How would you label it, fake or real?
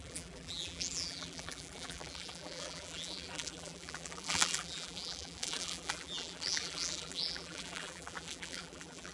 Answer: fake